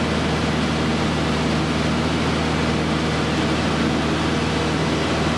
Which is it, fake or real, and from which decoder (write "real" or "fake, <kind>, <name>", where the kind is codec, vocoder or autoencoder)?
real